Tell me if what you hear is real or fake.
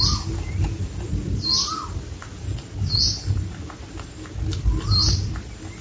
real